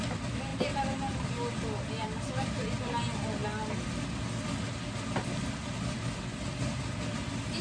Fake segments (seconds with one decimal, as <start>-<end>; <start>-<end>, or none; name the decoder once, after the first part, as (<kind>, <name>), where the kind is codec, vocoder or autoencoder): 0.5-1.5 (vocoder, BigVGAN v2)